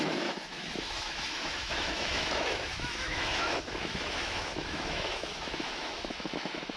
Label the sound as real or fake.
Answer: fake